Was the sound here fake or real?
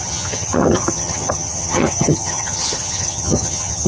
fake